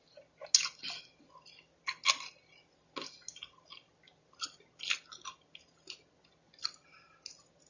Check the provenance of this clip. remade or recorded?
recorded